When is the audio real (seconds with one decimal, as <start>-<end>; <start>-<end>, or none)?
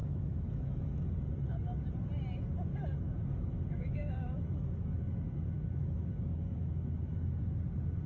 1.1-2.7; 7.4-8.1